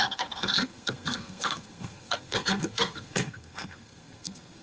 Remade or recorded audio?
remade